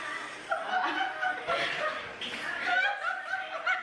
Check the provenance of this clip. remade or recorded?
recorded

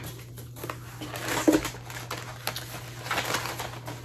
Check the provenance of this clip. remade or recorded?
recorded